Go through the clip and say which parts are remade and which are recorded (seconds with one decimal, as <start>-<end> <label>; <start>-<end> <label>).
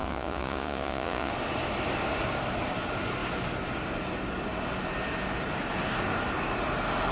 0.0-1.3 remade; 1.3-7.1 recorded